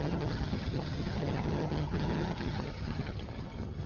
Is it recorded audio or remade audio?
remade